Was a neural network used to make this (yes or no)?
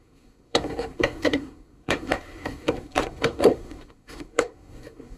yes